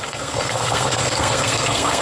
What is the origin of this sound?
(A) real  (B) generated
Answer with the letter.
B